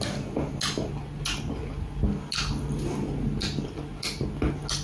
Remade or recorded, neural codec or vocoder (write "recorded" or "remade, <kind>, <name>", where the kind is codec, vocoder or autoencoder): recorded